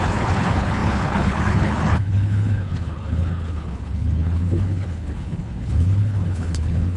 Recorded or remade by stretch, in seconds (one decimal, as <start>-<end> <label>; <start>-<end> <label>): 0.0-7.0 remade